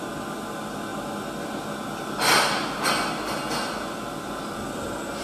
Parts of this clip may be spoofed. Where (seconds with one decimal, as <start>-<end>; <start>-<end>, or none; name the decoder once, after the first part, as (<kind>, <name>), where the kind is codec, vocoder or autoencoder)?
none